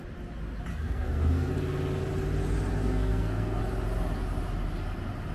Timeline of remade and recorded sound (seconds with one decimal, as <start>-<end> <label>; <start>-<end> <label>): 0.0-0.7 recorded; 0.7-1.5 remade; 1.5-2.8 recorded; 2.8-3.6 remade; 3.6-5.3 recorded